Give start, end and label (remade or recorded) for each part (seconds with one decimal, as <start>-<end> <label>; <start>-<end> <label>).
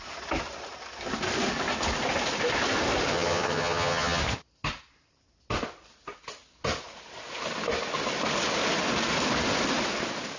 0.0-3.1 recorded; 3.1-4.2 remade; 4.2-10.4 recorded